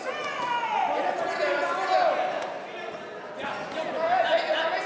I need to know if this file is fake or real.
real